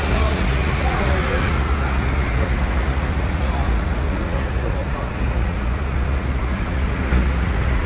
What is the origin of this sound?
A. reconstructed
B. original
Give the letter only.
A